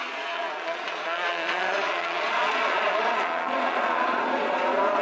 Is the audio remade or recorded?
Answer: remade